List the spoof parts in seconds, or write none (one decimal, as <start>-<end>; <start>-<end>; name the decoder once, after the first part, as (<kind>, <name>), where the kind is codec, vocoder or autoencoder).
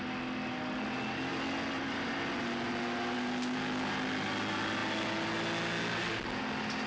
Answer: none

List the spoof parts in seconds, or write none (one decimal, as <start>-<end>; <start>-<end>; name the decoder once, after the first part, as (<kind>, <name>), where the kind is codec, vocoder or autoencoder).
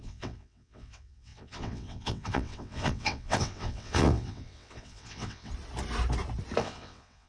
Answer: 0.0-5.5 (vocoder, WaveNeXt); 6.6-7.3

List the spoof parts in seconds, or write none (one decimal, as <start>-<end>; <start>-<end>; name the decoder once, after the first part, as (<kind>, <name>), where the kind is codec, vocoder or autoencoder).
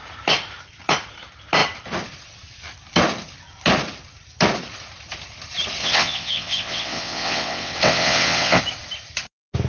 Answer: 5.8-8.6 (vocoder, WaveNeXt)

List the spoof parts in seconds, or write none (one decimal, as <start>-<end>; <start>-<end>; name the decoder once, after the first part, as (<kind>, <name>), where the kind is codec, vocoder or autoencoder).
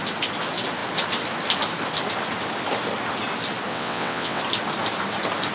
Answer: 3.7-4.4 (vocoder, WaveNeXt)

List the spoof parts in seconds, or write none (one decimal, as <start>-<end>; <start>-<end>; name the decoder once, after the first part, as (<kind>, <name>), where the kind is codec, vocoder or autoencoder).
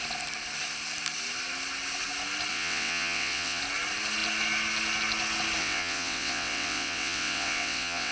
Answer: 2.5-3.6 (vocoder, WaveNeXt); 5.6-8.1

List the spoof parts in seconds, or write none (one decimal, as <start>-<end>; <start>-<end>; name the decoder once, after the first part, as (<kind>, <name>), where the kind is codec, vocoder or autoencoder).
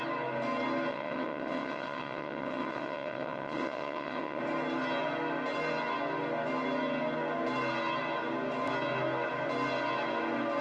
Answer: 0.9-4.4 (vocoder, WaveNeXt)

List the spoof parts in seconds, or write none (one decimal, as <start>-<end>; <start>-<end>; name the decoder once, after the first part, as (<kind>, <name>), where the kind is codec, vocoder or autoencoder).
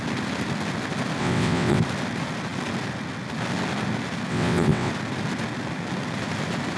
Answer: 1.2-1.8 (vocoder, WaveNeXt); 4.3-4.9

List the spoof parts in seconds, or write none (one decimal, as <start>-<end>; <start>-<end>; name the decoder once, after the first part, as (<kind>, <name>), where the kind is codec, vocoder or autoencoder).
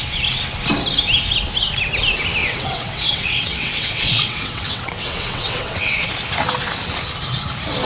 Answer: 2.4-6.1 (vocoder, WaveNeXt)